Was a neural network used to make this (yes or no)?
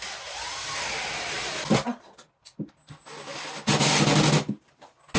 no